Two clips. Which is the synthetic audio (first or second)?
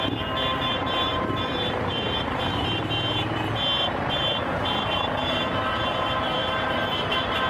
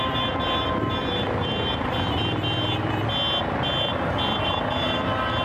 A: first